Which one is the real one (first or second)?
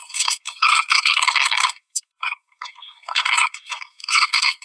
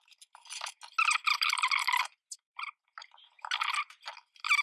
second